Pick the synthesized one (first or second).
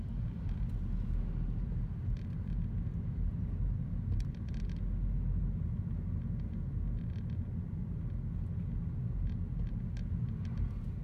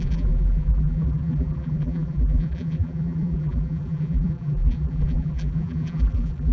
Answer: second